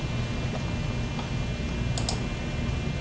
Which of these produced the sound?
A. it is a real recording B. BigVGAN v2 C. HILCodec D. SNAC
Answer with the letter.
A